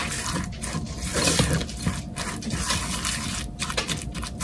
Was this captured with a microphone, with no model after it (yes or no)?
yes